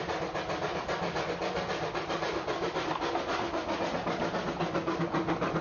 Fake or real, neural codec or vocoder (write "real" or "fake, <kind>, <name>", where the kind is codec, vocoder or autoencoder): real